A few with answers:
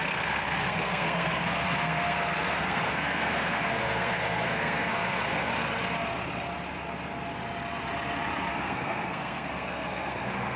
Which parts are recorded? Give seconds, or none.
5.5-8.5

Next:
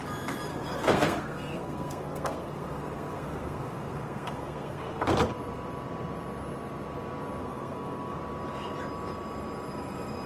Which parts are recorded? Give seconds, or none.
0.0-0.5; 5.1-7.4; 8.2-10.3

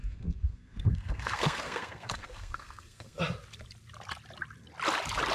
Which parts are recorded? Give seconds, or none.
3.2-5.3